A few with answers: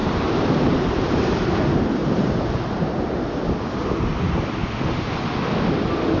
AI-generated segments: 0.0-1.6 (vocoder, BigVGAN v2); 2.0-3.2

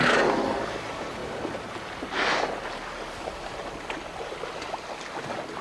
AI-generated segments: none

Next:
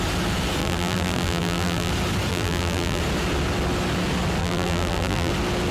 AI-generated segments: 0.6-1.9 (vocoder, BigVGAN v2); 2.3-3.0; 4.4-5.3